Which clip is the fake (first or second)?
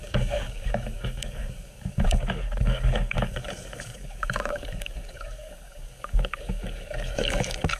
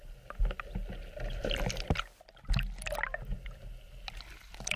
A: first